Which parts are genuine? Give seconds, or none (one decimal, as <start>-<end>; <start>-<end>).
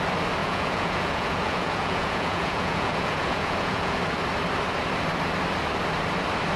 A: 0.0-0.4; 4.0-6.6